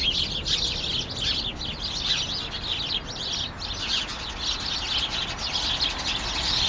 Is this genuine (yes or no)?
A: yes